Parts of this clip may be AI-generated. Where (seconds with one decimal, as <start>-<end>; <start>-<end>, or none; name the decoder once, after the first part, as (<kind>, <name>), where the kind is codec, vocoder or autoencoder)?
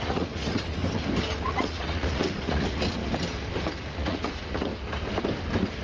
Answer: 0.0-0.8 (vocoder, Vocos); 1.5-3.0; 3.8-4.7